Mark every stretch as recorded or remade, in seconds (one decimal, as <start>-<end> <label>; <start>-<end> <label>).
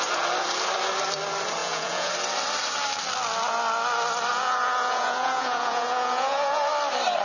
0.0-1.6 recorded; 1.6-2.1 remade; 2.1-4.3 recorded; 4.3-6.7 remade; 6.7-7.2 recorded